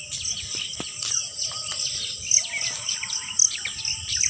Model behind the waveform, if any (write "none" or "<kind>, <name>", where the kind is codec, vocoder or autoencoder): none